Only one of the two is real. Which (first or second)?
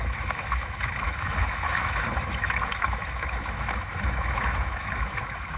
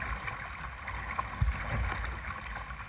second